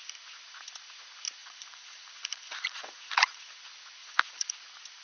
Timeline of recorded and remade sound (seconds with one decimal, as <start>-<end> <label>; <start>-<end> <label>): 0.0-1.4 recorded; 1.4-3.6 remade; 3.6-4.0 recorded; 4.0-4.5 remade; 4.5-5.0 recorded